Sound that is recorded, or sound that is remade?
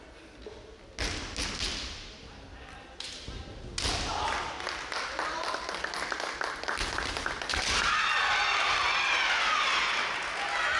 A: recorded